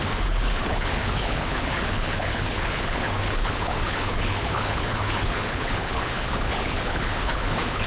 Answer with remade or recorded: remade